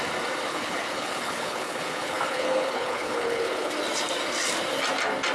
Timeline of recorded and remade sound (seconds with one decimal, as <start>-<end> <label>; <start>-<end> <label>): 0.0-0.5 recorded; 0.5-3.7 remade; 3.7-5.3 recorded